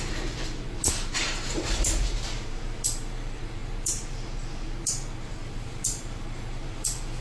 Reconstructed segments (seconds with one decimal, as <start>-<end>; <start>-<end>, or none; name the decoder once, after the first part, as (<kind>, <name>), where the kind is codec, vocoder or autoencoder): 0.0-7.2 (vocoder, BigVGAN v2)